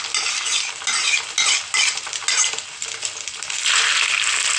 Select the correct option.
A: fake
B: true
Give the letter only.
B